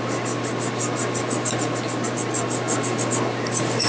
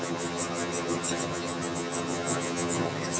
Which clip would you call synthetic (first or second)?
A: second